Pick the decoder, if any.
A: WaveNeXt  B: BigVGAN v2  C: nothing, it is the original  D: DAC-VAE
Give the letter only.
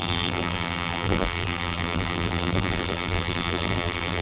B